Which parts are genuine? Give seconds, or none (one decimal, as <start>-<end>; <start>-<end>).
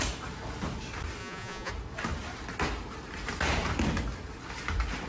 0.0-1.2; 1.7-5.1